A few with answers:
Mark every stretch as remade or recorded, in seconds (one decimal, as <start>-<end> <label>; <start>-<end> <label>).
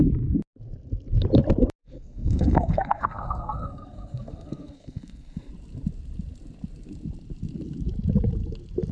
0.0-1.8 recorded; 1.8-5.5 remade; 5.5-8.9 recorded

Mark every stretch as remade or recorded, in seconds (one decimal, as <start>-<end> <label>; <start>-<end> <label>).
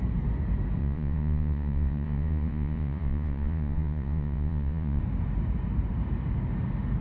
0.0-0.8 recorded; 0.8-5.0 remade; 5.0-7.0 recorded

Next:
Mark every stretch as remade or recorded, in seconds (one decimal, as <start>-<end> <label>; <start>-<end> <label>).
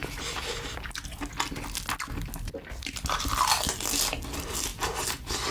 0.0-5.5 recorded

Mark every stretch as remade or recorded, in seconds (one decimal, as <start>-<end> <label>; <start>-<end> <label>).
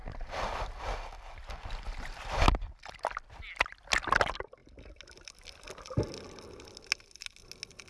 0.0-7.9 recorded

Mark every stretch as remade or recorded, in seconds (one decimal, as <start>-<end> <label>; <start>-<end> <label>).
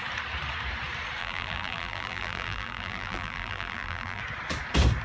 0.0-1.2 recorded; 1.2-4.2 remade; 4.2-5.0 recorded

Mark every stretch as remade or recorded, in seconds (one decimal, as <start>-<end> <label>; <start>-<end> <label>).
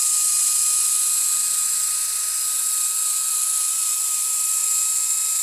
0.0-0.5 remade; 0.5-2.4 recorded; 2.4-4.6 remade; 4.6-5.4 recorded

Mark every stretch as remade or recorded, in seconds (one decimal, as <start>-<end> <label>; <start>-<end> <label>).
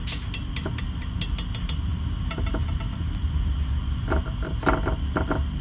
0.0-5.6 recorded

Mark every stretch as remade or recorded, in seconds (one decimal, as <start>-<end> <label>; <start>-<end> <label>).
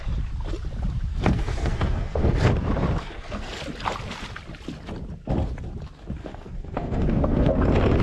0.0-1.1 recorded; 1.1-2.5 remade; 2.5-3.0 recorded; 3.0-3.6 remade; 3.6-6.2 recorded; 6.2-7.5 remade; 7.5-8.0 recorded